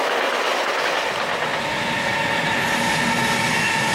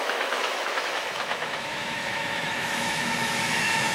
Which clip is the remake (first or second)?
second